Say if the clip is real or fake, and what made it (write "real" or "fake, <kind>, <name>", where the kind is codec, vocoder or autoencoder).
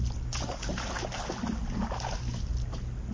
real